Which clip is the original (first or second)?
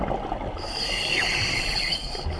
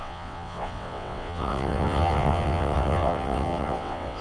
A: first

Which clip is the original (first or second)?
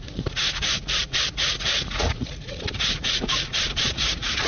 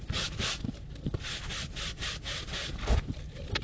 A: second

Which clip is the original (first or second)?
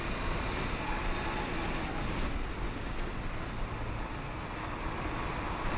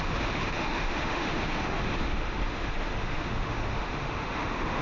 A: first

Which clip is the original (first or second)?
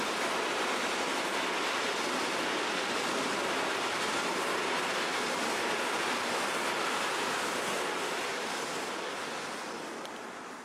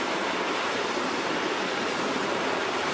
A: first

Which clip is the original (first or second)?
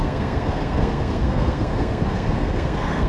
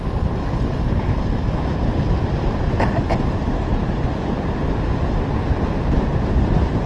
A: second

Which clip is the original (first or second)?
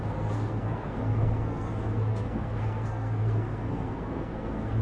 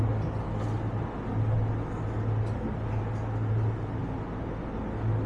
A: second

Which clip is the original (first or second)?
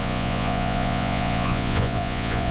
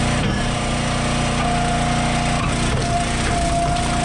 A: second